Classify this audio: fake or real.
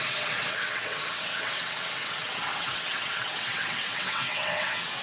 fake